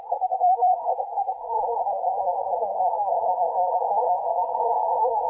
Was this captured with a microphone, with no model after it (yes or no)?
no